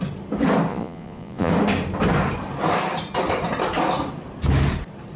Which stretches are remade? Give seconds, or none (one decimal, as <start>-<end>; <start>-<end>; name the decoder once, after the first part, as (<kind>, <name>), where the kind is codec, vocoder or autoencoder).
0.7-1.5 (vocoder, Vocos)